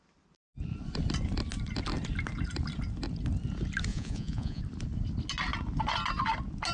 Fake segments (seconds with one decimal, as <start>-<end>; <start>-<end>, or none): 3.9-4.6